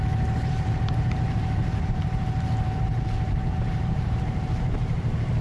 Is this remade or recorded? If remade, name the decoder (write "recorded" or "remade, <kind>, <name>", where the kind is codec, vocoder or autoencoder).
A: remade, vocoder, BigVGAN v2